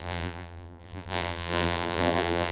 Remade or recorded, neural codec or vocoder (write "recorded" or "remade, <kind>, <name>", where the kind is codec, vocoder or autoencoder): remade, vocoder, BigVGAN v2